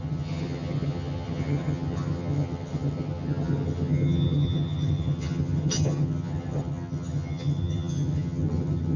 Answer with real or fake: fake